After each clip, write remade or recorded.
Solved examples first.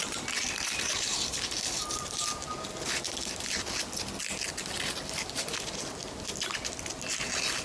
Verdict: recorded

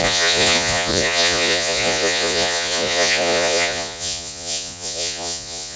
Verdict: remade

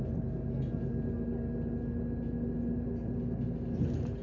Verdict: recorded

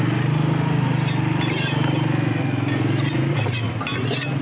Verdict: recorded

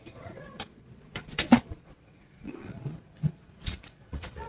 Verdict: remade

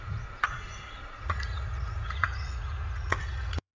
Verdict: remade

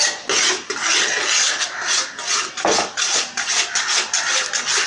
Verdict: recorded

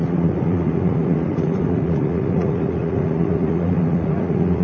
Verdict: remade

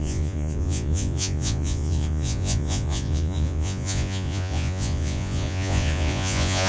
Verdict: remade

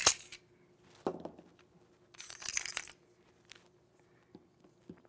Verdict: recorded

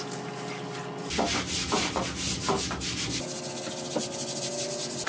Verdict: recorded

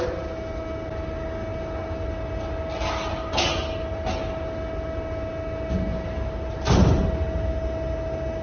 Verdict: recorded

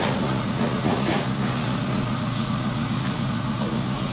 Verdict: remade